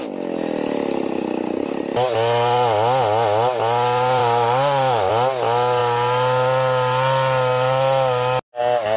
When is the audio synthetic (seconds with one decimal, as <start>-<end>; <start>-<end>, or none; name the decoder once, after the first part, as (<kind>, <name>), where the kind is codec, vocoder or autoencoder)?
4.2-5.1 (codec, DAC)